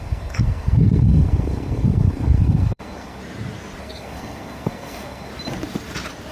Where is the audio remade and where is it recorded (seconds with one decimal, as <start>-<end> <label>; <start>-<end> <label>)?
0.0-3.2 remade; 3.2-3.8 recorded; 3.8-5.3 remade; 5.3-6.3 recorded